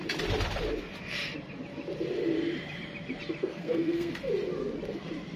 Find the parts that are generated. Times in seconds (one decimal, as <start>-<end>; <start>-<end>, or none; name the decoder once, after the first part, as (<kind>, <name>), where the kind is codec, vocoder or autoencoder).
3.4-4.1 (codec, SNAC)